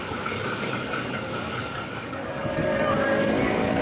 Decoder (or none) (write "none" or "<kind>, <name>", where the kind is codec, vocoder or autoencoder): codec, DAC